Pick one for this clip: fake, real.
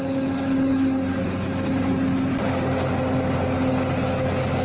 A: real